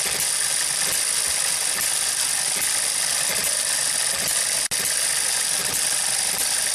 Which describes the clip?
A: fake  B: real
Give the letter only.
B